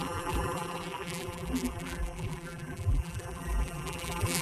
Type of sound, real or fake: fake